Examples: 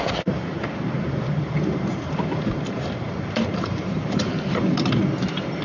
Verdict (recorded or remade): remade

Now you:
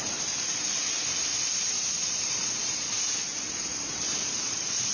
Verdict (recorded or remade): remade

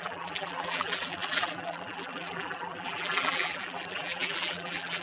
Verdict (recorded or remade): remade